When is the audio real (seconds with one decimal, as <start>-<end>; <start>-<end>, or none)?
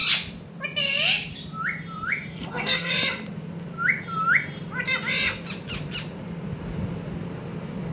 0.0-2.3; 2.9-7.9